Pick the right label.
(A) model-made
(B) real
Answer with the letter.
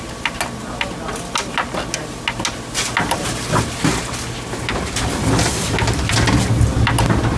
B